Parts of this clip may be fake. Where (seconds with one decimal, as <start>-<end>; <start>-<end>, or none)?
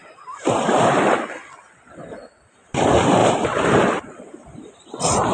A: 0.0-0.9; 3.2-3.8